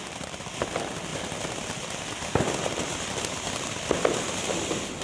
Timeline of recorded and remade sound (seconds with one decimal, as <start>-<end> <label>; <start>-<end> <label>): 0.0-5.0 recorded